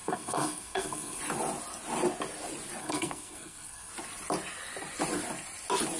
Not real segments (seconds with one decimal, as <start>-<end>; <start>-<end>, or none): 0.0-1.2; 2.8-3.9